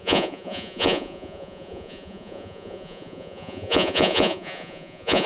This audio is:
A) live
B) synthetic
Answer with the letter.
B